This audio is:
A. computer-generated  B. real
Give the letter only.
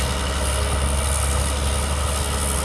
B